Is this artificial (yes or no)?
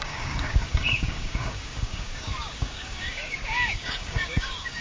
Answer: yes